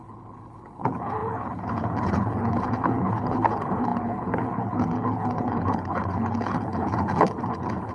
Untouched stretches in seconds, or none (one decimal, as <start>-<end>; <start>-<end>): none